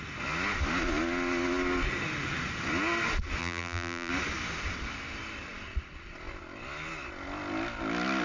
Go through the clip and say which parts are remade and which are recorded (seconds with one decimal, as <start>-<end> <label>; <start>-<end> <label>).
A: 0.0-3.4 recorded; 3.4-4.1 remade; 4.1-8.2 recorded